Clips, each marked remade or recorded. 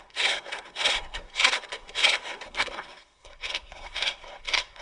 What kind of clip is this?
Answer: remade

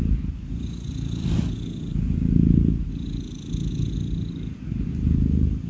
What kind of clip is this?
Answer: recorded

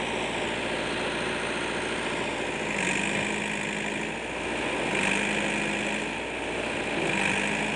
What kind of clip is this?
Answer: recorded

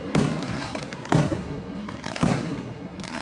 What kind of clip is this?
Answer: remade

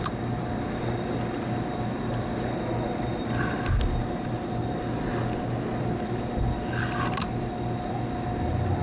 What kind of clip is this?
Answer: recorded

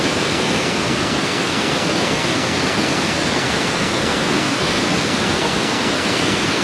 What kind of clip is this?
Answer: remade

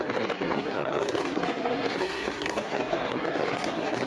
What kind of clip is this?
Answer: remade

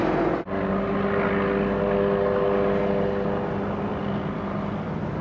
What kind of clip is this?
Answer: recorded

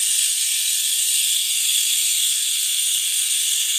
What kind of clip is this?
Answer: remade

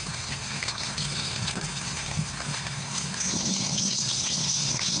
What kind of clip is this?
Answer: remade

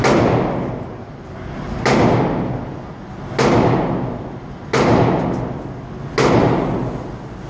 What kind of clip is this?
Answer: recorded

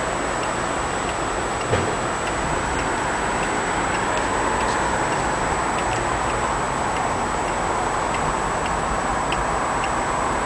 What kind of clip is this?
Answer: recorded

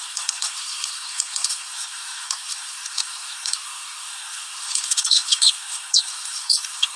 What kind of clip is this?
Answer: remade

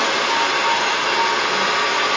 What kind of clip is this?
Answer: recorded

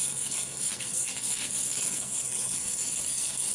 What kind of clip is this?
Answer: remade